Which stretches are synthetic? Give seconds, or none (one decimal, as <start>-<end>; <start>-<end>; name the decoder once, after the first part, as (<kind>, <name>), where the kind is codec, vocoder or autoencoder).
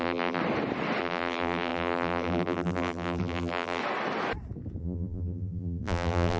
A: 0.0-0.4 (vocoder, BigVGAN v2); 1.0-3.8; 4.8-6.4